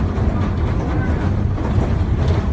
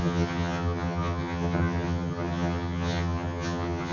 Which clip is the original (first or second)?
first